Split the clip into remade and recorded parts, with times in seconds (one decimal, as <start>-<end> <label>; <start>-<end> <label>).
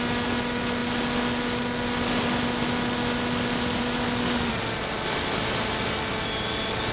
0.0-6.9 recorded